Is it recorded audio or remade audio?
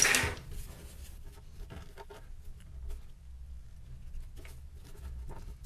recorded